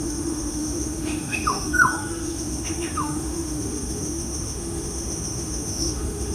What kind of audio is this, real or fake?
fake